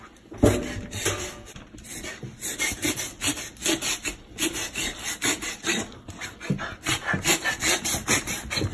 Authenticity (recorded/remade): recorded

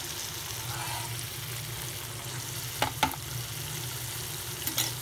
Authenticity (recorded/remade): recorded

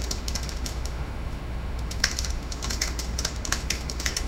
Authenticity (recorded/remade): remade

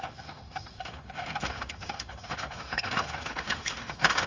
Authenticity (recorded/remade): remade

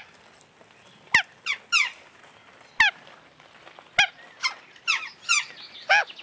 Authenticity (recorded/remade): recorded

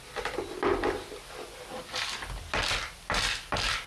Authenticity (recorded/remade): recorded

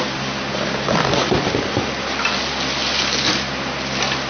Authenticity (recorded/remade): recorded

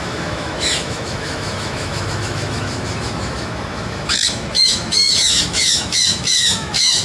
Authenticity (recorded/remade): remade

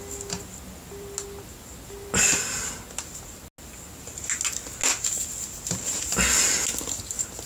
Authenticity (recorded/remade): recorded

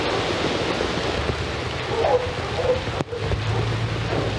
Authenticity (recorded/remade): recorded